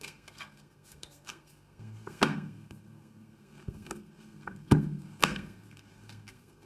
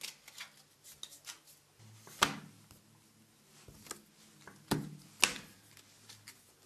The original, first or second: second